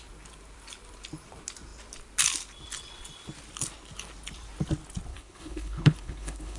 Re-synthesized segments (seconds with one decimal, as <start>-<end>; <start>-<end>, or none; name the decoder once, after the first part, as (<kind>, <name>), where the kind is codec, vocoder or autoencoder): 5.1-6.6 (codec, HILCodec)

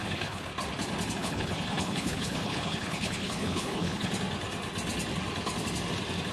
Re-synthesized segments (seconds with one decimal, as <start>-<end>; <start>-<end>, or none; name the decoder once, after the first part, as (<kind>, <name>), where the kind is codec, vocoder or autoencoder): 0.0-0.5 (codec, HILCodec); 1.2-4.1